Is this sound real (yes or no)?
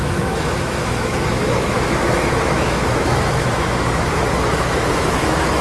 no